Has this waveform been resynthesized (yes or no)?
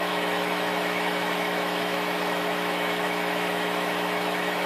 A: yes